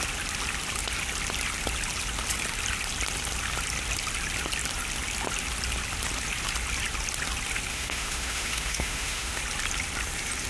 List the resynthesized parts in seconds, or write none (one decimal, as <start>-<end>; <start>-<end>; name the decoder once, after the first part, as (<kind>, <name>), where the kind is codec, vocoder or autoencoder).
7.7-9.4 (autoencoder, DAC-VAE)